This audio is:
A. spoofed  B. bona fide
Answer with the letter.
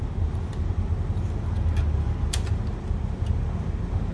B